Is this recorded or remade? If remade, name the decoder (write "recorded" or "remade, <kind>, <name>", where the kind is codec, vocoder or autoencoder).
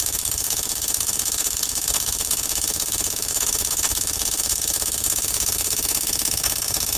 remade, autoencoder, DAC-VAE